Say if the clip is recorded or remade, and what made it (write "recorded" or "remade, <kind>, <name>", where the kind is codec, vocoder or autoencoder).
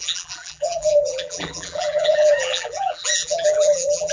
remade, vocoder, BigVGAN v2